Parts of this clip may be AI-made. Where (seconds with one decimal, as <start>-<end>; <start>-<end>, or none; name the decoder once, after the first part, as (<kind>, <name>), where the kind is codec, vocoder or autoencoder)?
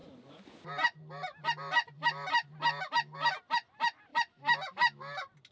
none